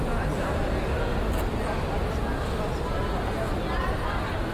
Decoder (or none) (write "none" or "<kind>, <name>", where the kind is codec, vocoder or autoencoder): none